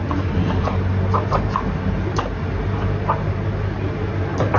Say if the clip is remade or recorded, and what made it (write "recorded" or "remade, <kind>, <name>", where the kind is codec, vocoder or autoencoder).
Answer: recorded